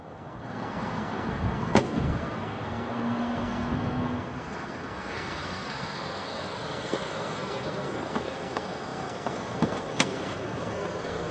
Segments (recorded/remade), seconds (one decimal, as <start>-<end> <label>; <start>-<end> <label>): 0.0-11.3 remade